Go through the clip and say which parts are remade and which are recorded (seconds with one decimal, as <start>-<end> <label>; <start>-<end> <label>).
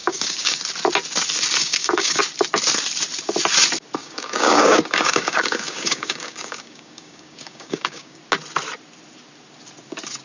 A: 0.0-0.6 remade; 0.6-1.6 recorded; 1.6-2.2 remade; 2.2-4.0 recorded; 4.0-8.2 remade; 8.2-10.2 recorded